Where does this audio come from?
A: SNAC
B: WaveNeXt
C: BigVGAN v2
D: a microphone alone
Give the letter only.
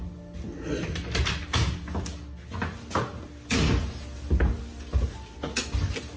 D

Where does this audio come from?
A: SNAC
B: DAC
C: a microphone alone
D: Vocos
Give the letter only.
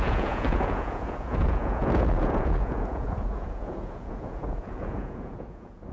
D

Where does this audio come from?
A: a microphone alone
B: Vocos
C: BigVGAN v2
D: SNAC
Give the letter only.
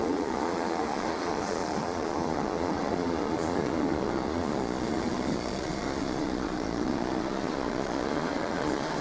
B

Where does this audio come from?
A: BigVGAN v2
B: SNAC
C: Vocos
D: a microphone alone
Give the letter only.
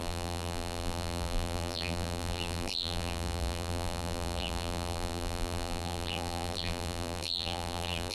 A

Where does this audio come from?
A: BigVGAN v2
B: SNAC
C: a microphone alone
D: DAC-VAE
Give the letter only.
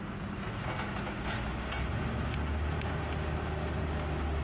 C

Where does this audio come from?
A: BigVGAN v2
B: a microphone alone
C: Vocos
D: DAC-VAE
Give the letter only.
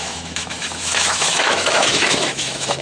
D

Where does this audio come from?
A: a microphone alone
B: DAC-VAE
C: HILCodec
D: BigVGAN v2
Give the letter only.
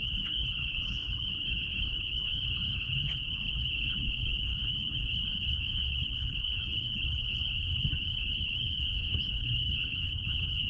C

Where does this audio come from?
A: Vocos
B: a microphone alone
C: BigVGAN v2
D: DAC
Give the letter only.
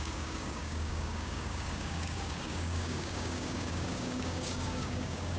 D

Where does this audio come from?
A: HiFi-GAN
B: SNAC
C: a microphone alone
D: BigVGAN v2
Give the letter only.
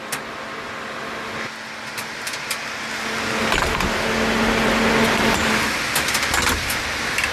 C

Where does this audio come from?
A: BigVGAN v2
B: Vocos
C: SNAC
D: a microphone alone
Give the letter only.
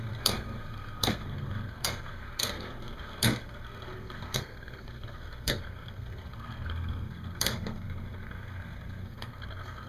C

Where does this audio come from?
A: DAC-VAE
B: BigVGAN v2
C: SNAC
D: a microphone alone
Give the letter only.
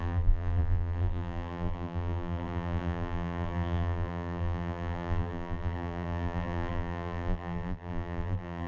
B